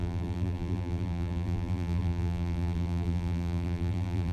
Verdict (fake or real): fake